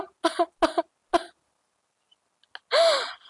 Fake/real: real